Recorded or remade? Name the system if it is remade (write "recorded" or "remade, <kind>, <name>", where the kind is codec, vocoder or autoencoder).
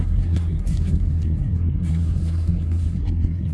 remade, codec, SNAC